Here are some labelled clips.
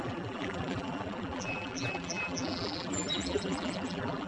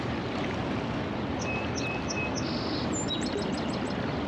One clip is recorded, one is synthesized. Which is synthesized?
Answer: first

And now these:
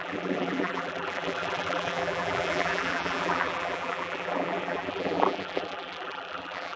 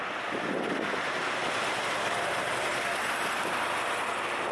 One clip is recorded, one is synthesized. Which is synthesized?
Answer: first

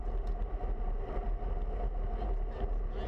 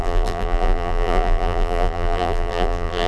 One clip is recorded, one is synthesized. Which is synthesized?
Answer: second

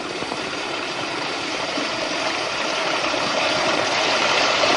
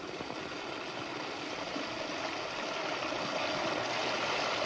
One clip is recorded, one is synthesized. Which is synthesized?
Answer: first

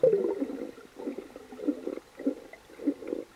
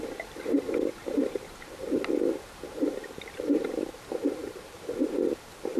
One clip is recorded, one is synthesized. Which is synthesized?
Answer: second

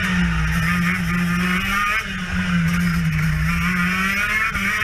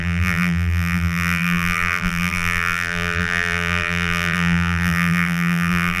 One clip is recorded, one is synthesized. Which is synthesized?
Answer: second